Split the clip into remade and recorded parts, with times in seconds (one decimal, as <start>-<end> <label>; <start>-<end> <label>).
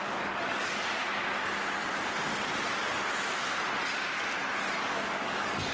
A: 0.0-1.0 remade; 1.0-4.4 recorded; 4.4-5.7 remade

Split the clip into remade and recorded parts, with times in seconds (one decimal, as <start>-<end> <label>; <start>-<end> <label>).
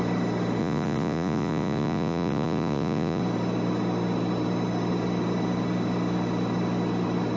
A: 0.0-0.6 recorded; 0.6-3.2 remade; 3.2-7.4 recorded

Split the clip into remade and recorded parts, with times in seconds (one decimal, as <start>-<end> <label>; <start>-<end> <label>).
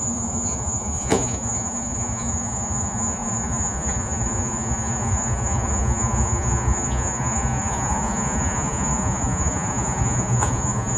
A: 0.0-11.0 remade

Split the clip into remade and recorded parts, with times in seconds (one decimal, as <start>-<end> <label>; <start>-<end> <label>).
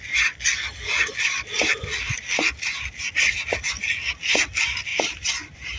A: 0.0-4.9 recorded; 4.9-5.8 remade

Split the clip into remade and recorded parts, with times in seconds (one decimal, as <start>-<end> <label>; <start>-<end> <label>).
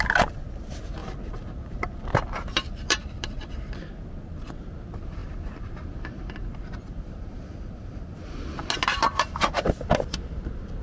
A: 0.0-1.0 recorded; 1.0-3.3 remade; 3.3-10.8 recorded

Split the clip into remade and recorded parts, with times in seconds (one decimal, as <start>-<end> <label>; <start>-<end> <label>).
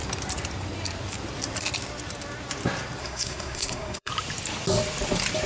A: 0.0-3.0 recorded; 3.0-4.1 remade; 4.1-5.5 recorded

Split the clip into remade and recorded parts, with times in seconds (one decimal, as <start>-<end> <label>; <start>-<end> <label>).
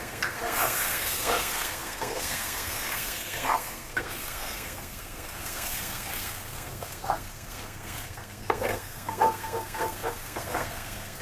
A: 0.0-11.2 remade